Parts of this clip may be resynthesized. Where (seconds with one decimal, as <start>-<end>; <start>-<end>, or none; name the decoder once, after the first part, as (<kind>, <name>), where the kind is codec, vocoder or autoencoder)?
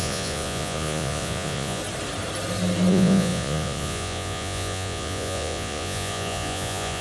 0.0-1.8 (vocoder, Vocos); 2.9-7.0